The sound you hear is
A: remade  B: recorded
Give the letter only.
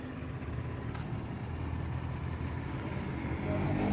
B